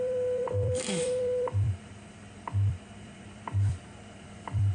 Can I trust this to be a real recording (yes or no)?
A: no